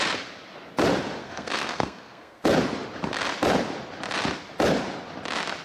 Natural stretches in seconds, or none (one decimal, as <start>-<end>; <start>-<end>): 0.0-1.2; 2.4-5.6